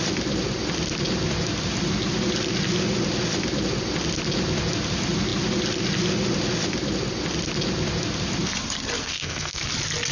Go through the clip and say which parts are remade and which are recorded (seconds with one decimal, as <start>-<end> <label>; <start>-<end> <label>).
0.0-9.0 recorded; 9.0-9.6 remade; 9.6-10.1 recorded

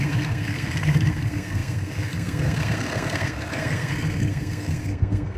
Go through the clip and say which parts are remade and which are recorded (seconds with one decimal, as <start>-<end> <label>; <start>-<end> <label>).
0.0-5.4 remade

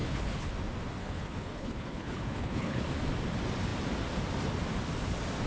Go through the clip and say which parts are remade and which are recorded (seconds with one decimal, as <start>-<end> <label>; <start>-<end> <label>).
0.0-0.5 remade; 0.5-1.0 recorded; 1.0-2.8 remade; 2.8-5.5 recorded